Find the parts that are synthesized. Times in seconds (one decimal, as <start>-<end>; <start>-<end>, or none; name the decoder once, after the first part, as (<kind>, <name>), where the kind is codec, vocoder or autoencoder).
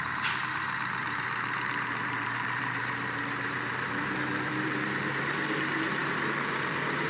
0.0-7.1 (vocoder, BigVGAN v2)